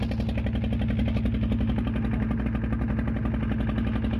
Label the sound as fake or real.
real